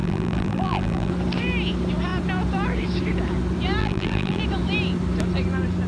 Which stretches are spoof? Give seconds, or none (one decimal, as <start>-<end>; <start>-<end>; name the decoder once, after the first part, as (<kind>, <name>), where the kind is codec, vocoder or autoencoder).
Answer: 0.0-1.1 (vocoder, BigVGAN v2); 3.8-4.4